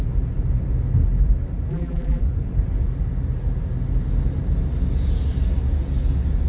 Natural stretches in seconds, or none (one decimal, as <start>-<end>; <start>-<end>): 0.0-1.7; 2.2-6.5